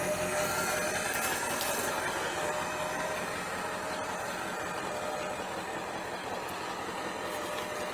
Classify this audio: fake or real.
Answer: real